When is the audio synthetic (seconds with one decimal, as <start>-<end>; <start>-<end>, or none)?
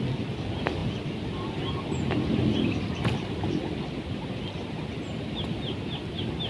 none